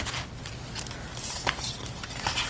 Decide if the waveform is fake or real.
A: real